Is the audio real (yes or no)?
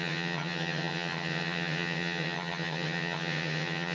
no